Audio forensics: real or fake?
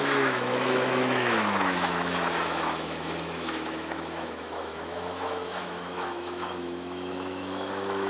fake